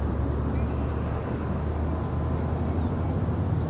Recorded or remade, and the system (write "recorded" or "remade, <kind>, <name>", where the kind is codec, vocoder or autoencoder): recorded